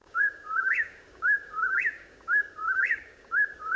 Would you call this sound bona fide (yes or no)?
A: no